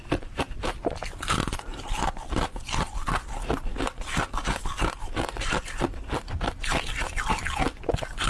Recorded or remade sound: recorded